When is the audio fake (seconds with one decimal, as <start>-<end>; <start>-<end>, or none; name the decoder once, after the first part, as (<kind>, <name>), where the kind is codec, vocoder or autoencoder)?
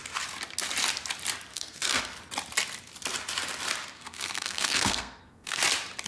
1.5-2.0 (codec, SNAC); 3.9-5.6